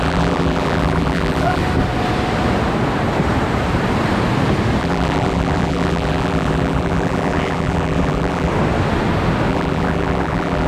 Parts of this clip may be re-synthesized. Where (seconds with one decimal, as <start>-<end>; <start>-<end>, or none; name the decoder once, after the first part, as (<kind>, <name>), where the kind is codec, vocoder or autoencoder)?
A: 0.0-1.6 (vocoder, BigVGAN v2); 4.8-8.5; 9.5-10.7